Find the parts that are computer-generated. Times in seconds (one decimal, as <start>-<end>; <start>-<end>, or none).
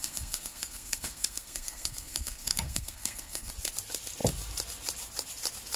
0.0-3.5